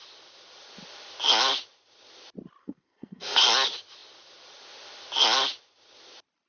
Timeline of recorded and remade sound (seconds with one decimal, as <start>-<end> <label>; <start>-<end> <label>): 0.0-2.6 recorded; 2.6-3.4 remade; 3.4-6.5 recorded